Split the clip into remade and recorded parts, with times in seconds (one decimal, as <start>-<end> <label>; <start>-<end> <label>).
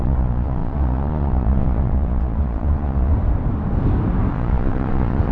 0.0-3.1 remade; 3.1-4.3 recorded; 4.3-5.3 remade